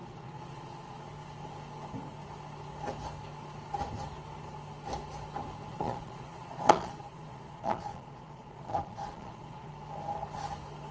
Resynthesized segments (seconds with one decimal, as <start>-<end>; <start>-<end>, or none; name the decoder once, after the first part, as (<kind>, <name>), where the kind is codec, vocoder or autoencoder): 0.0-1.0 (vocoder, Vocos); 5.7-9.7